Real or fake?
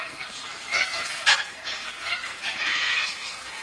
fake